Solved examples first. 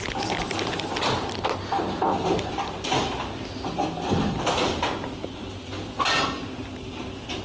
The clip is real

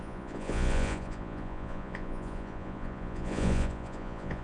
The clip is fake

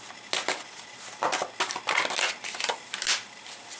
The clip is real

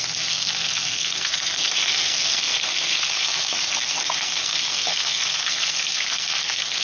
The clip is fake